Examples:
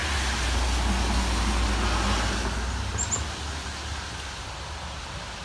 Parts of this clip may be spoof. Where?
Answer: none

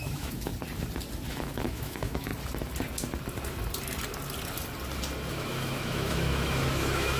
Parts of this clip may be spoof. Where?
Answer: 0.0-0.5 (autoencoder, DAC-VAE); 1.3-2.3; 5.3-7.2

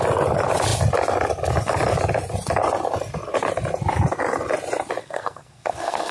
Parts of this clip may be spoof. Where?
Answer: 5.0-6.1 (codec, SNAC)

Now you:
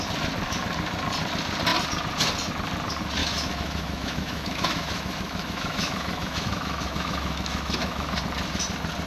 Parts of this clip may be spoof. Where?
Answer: 3.2-8.2 (autoencoder, DAC-VAE)

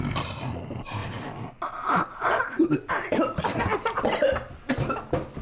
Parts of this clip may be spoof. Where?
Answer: none

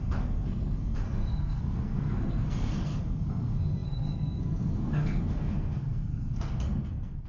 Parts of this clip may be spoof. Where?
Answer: 0.0-7.3 (codec, SNAC)

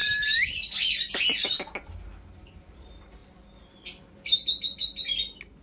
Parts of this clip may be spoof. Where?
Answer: none